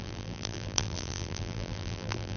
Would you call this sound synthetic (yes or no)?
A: yes